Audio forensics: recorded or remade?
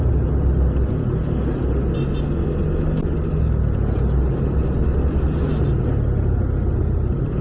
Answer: recorded